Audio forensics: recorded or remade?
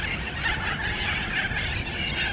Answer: recorded